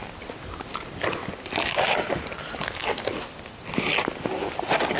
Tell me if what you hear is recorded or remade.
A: recorded